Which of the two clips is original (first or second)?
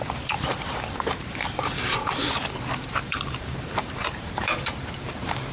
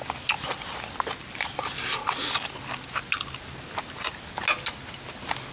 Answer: second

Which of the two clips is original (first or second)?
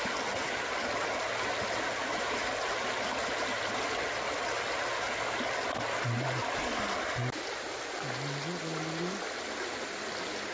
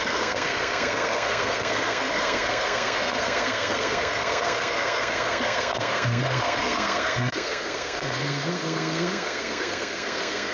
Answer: first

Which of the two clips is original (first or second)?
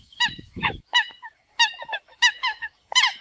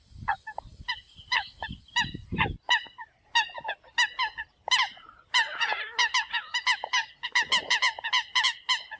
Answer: second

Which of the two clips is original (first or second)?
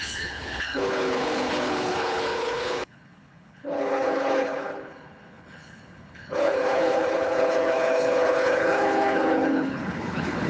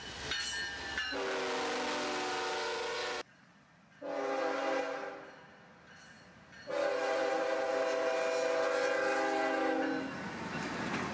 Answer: second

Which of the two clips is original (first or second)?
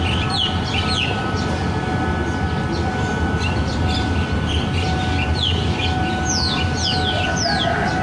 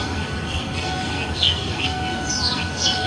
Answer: first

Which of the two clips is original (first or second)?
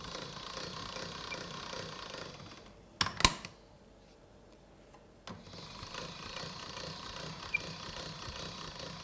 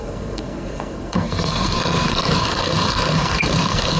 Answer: first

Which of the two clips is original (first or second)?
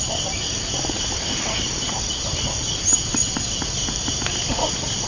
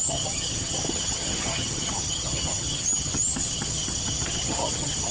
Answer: first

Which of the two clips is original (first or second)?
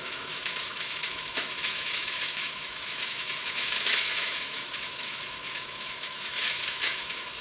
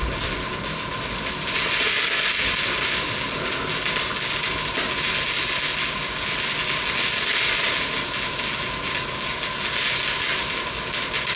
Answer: second